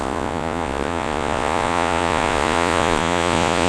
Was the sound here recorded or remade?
remade